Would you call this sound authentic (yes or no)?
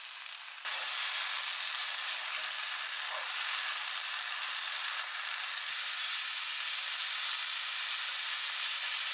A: yes